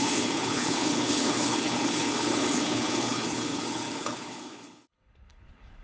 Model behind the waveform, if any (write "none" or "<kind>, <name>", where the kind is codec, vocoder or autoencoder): codec, HILCodec